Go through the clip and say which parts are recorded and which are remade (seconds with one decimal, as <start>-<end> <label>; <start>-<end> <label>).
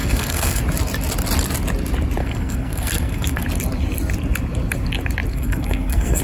0.0-0.6 remade; 0.6-2.2 recorded; 2.2-3.4 remade; 3.4-5.3 recorded; 5.3-6.2 remade